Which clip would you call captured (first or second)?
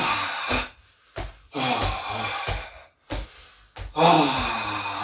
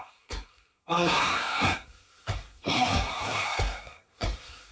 first